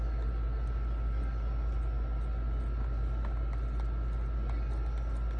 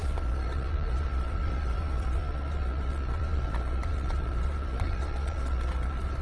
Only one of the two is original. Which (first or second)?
first